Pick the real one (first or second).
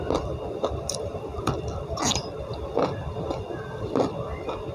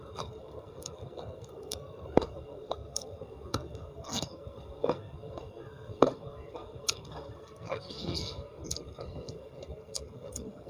first